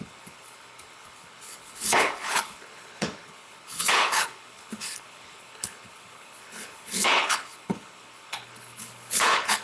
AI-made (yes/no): yes